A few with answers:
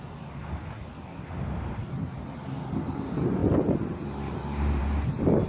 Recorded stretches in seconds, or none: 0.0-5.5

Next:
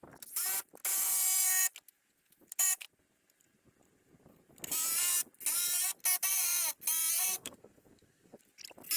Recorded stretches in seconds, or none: 0.0-7.3; 8.4-9.0